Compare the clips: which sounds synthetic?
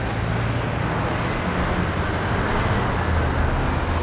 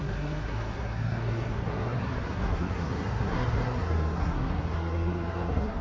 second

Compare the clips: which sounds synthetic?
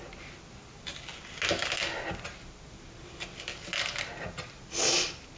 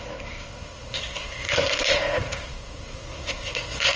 second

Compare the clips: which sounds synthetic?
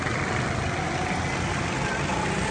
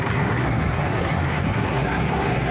second